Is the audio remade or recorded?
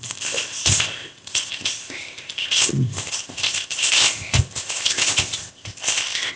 remade